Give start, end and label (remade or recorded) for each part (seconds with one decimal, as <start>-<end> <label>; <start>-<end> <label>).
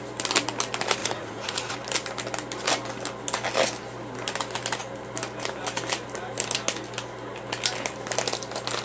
0.0-1.0 recorded; 1.0-1.7 remade; 1.7-8.8 recorded